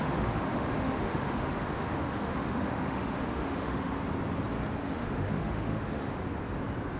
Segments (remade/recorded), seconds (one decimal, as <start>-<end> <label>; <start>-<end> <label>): 0.0-3.9 remade; 3.9-4.8 recorded; 4.8-6.1 remade; 6.1-7.0 recorded